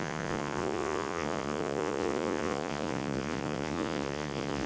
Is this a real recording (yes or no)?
no